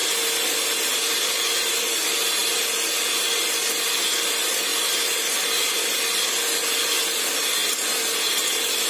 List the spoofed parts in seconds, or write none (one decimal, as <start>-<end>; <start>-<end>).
4.7-5.4